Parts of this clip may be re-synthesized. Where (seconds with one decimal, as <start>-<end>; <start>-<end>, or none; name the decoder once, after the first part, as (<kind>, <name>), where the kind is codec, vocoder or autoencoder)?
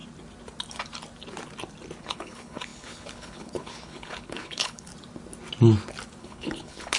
2.0-4.9 (codec, HILCodec); 6.2-7.0